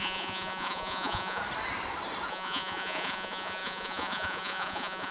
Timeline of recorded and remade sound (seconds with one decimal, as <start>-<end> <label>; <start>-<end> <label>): 0.0-1.4 remade; 1.4-2.3 recorded; 2.3-5.1 remade